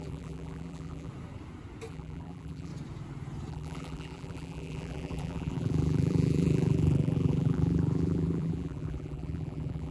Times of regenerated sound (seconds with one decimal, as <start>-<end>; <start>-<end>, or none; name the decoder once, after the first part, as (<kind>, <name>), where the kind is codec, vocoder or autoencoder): 0.0-1.1 (vocoder, BigVGAN v2); 1.9-2.7; 3.5-9.9